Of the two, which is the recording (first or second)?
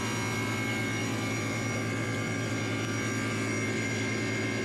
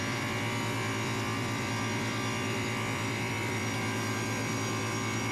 first